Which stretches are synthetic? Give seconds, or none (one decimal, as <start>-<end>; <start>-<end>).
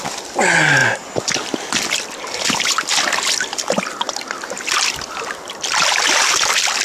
none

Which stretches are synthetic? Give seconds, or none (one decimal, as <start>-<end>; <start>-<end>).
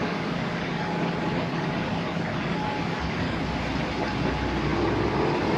0.0-3.4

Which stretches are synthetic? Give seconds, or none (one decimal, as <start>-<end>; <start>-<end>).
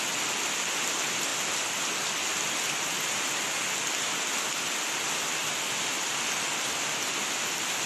none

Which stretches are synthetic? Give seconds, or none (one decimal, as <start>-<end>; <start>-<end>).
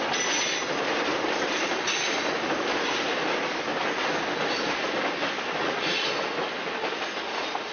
5.6-6.1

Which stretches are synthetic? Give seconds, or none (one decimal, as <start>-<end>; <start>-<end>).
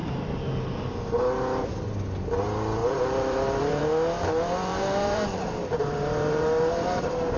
2.8-3.8; 4.7-7.4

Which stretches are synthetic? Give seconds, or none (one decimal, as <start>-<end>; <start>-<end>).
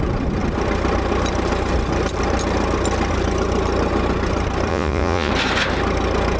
4.7-5.3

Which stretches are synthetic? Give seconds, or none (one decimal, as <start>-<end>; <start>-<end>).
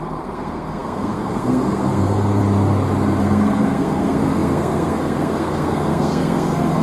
0.0-2.4; 3.2-6.8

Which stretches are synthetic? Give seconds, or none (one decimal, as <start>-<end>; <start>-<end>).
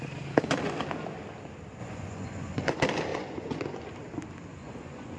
1.8-2.7; 3.1-3.9; 4.5-5.2